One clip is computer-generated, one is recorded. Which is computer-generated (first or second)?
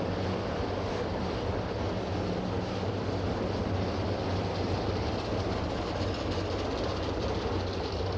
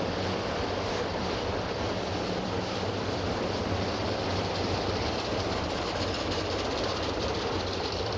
second